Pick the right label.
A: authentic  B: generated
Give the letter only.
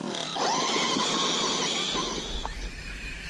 A